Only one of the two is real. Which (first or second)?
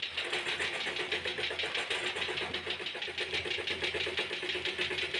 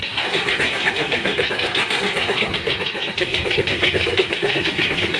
first